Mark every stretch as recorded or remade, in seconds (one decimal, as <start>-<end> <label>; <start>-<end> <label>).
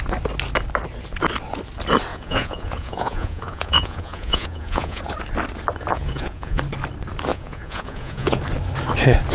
0.0-2.1 recorded; 2.1-5.0 remade; 5.0-5.9 recorded; 5.9-6.6 remade; 6.6-7.3 recorded; 7.3-8.4 remade; 8.4-9.3 recorded